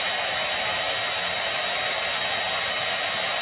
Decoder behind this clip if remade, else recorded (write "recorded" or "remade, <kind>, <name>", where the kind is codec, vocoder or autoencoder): recorded